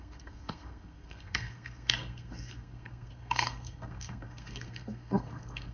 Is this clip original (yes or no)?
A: no